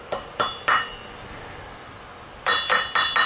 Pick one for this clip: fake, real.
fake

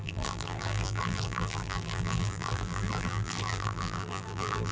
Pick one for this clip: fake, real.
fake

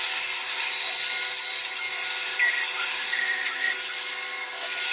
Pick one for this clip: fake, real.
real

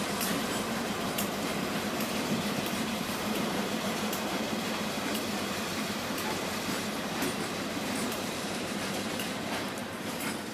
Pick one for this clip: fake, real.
fake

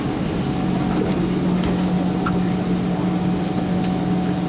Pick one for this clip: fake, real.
real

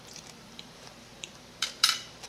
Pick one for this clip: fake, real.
fake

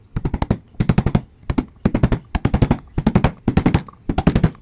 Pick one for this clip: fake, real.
real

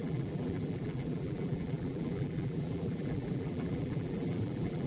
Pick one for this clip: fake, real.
fake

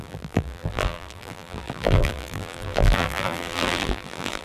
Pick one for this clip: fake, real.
fake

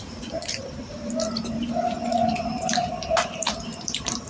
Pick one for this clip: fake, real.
fake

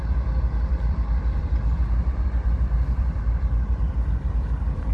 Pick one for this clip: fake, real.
fake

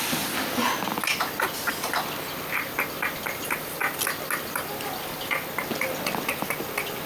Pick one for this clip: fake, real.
real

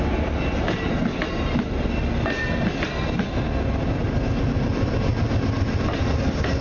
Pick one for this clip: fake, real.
real